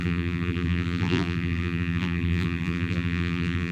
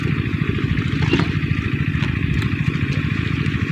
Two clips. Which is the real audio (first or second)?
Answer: second